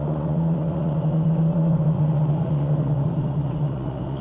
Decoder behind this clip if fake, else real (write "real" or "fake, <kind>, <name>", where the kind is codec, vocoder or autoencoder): fake, vocoder, Vocos